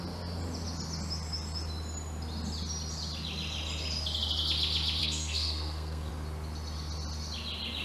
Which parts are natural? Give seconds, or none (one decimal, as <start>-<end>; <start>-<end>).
0.0-5.0; 6.1-7.8